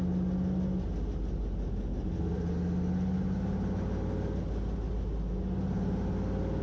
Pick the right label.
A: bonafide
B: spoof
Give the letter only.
A